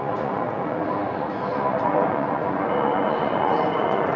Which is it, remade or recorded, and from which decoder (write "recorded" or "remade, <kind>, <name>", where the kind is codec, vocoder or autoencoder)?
remade, vocoder, Vocos